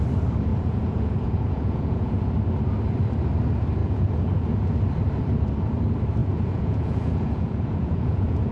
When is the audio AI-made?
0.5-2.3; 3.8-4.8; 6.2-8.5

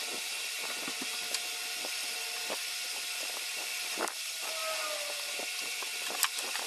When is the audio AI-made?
1.1-2.7; 3.7-4.8; 5.9-6.7

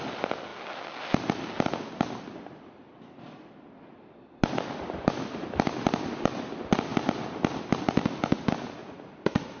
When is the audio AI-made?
8.8-9.6